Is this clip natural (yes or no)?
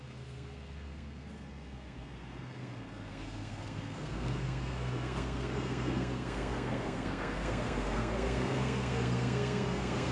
no